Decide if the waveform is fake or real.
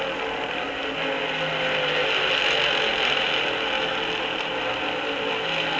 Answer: real